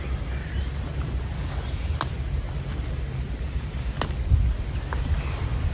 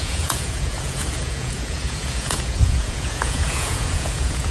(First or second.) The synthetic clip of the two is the second